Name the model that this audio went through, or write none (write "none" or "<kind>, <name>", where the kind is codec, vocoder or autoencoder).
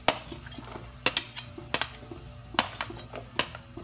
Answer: none